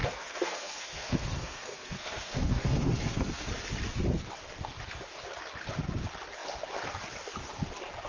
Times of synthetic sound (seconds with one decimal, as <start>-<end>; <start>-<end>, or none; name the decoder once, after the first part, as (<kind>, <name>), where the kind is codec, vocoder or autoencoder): 0.0-3.5 (codec, SNAC)